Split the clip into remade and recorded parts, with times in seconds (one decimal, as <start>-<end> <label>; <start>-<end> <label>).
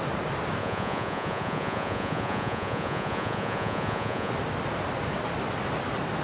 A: 0.0-0.6 recorded; 0.6-4.3 remade; 4.3-6.2 recorded